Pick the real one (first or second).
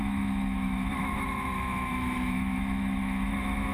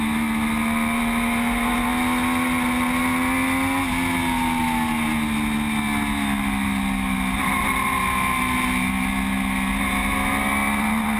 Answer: second